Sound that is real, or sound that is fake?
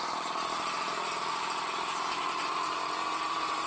fake